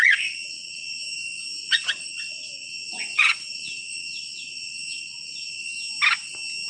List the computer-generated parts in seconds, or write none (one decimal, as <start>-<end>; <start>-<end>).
0.0-1.0; 1.6-5.6